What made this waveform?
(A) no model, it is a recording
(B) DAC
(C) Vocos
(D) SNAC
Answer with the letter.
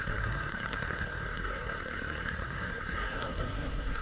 D